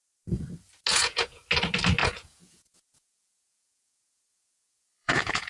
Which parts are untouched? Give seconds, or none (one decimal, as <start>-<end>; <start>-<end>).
0.0-0.9; 1.4-2.0